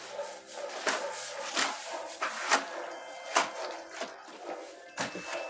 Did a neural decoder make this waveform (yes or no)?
no